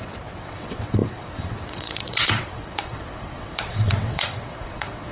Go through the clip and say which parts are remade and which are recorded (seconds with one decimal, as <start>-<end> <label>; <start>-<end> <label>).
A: 0.0-5.1 remade